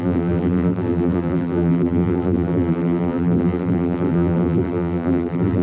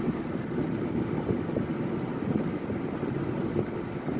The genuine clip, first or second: second